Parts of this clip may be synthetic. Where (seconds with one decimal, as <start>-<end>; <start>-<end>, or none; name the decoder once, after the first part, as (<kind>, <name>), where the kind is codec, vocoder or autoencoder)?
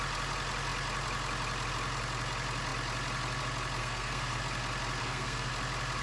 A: 3.8-4.4 (codec, SNAC); 5.0-5.5